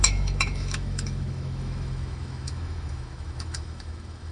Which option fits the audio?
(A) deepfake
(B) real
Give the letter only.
A